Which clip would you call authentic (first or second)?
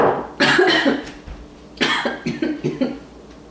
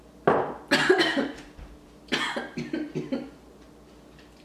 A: second